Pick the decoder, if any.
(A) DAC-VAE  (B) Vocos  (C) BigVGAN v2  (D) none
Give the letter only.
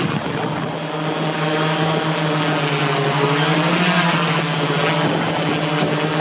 D